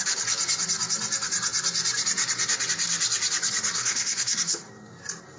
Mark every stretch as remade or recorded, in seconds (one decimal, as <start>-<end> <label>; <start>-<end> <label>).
0.0-3.7 recorded; 3.7-4.7 remade; 4.7-5.4 recorded